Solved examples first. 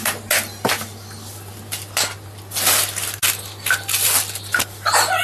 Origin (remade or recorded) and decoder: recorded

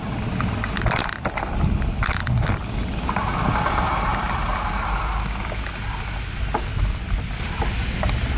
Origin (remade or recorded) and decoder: recorded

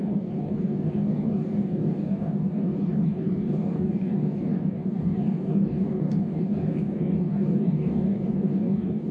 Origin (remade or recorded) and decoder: remade, codec, DAC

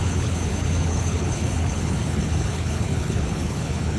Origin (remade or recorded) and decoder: remade, codec, HILCodec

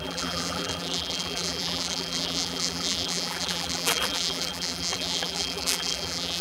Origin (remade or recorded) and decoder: remade, vocoder, BigVGAN v2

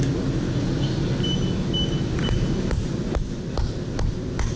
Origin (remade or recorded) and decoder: recorded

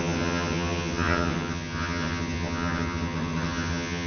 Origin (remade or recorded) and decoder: remade, vocoder, HiFi-GAN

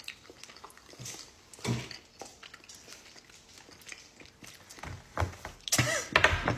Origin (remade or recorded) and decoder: recorded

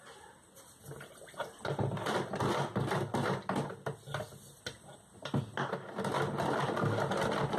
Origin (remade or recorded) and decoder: recorded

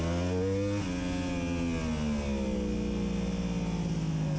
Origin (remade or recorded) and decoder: recorded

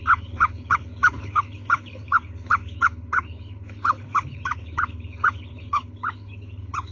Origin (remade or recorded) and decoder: remade, codec, HILCodec